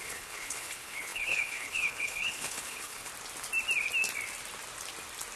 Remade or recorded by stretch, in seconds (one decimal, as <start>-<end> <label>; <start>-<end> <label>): 0.0-3.1 remade; 3.1-5.4 recorded